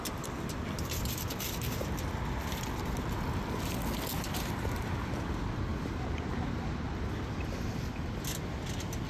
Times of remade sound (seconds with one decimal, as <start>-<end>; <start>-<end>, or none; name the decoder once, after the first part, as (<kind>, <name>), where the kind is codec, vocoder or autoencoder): none